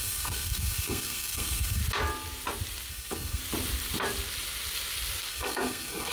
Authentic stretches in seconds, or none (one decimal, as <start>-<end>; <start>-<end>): 1.8-2.9; 3.4-5.3